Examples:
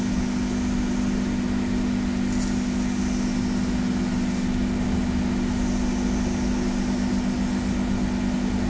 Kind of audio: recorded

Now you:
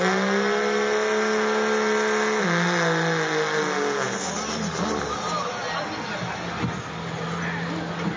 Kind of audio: recorded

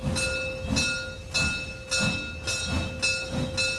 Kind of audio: recorded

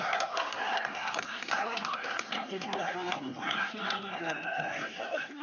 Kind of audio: remade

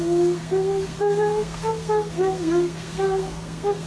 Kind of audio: remade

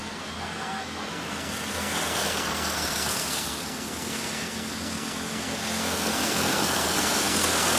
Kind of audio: remade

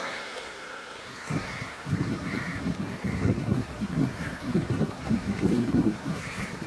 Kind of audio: remade